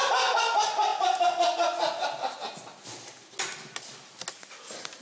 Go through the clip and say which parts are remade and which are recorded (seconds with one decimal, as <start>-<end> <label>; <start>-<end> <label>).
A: 0.0-5.0 recorded